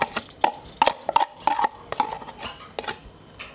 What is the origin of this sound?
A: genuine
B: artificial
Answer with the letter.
A